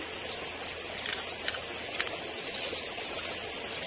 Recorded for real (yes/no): yes